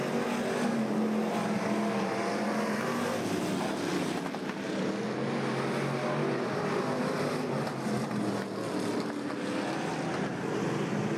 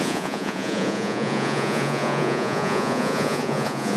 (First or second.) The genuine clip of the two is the first